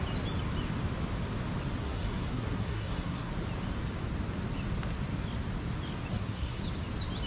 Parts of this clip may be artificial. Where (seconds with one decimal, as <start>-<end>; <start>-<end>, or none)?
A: 1.8-3.3; 6.1-6.6